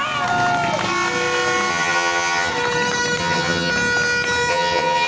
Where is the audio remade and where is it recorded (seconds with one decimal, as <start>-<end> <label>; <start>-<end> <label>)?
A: 0.0-1.7 recorded; 1.7-2.5 remade; 2.5-3.2 recorded; 3.2-3.7 remade; 3.7-4.5 recorded; 4.5-5.1 remade